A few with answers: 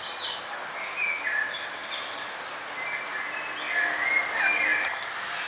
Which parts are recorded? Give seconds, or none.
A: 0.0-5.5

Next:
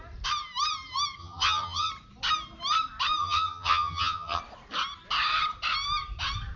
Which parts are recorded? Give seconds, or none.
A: 0.0-1.2; 1.9-3.2; 4.4-6.6

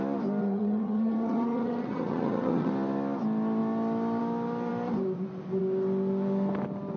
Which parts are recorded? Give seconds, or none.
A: 0.0-0.4; 2.7-7.0

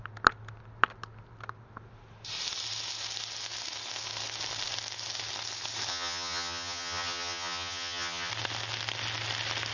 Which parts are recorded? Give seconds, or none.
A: 0.0-5.9; 8.3-9.7

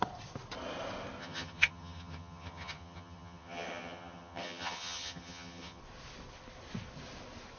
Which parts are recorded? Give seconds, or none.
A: 0.0-1.2; 5.8-7.6

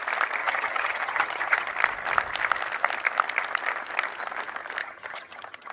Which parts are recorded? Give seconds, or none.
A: 0.0-0.4; 1.7-4.8

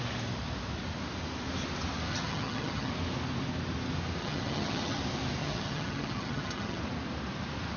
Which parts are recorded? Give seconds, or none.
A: 0.0-2.1; 2.9-4.2; 5.0-5.4; 6.8-7.8